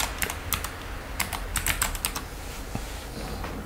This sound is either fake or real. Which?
real